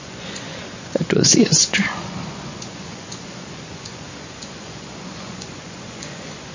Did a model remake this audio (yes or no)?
yes